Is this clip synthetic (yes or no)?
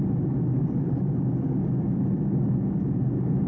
no